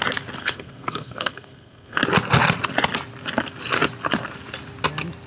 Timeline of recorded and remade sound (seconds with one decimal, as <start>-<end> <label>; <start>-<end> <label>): 0.0-0.4 recorded; 0.4-2.0 remade; 2.0-5.3 recorded